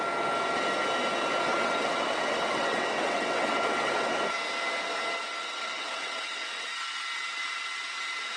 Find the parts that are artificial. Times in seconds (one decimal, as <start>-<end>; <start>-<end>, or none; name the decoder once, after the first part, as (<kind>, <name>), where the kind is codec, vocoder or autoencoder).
1.5-4.2 (vocoder, WaveNeXt); 5.4-6.7